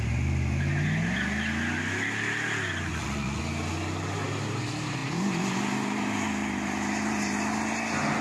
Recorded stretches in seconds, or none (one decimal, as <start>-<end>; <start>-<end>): 0.0-2.9; 3.4-8.2